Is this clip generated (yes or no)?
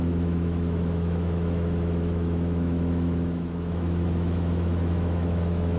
yes